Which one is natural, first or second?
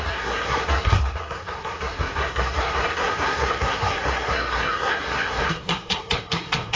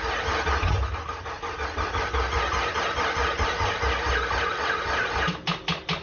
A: second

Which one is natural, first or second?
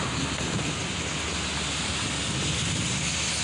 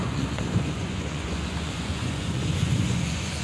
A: first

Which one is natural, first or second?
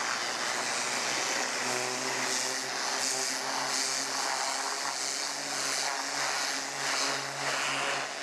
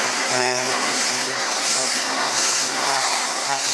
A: first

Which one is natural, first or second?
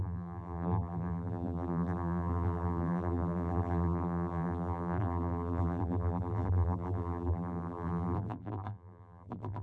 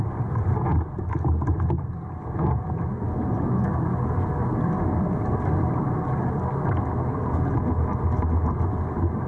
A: second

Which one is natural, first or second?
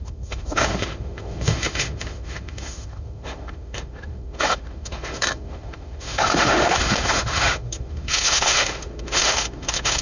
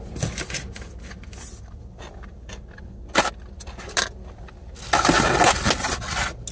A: second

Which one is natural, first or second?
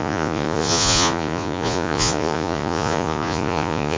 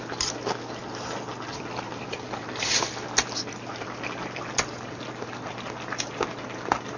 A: second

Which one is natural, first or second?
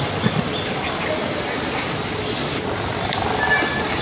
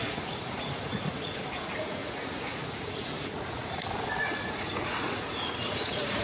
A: first